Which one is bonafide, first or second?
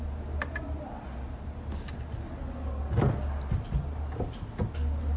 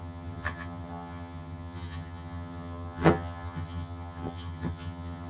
first